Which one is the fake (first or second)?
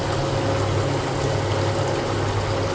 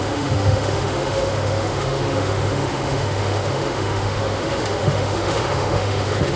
second